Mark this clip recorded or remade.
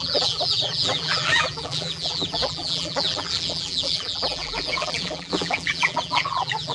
remade